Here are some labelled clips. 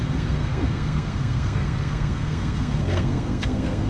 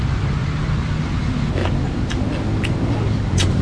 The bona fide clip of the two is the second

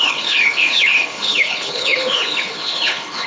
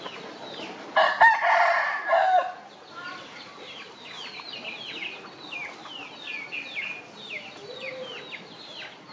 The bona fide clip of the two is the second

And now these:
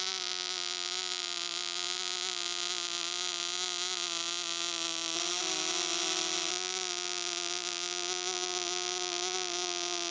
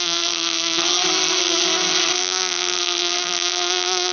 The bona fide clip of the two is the first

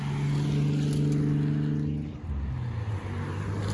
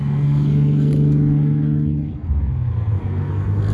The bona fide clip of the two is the first